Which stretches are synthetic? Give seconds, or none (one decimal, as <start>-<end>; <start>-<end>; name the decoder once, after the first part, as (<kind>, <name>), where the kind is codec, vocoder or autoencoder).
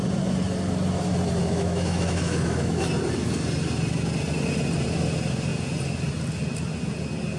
1.4-2.9 (autoencoder, DAC-VAE)